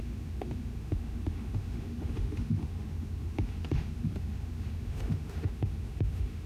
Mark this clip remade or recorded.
remade